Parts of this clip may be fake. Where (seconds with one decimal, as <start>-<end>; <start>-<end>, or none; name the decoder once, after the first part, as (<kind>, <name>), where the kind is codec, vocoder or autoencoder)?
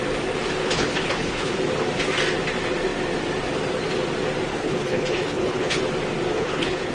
0.6-1.5 (codec, HILCodec); 4.5-5.8; 6.3-6.9